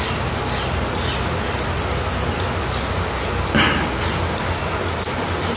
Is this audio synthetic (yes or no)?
no